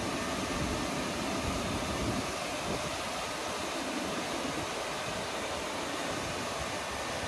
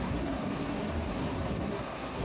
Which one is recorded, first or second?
first